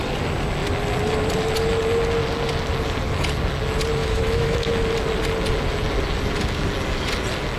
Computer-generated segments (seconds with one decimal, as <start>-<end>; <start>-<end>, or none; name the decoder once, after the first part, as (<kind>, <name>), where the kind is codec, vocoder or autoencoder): 4.0-4.7 (autoencoder, DAC-VAE)